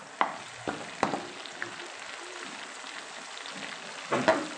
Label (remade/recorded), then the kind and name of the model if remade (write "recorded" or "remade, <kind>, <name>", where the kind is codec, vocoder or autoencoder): recorded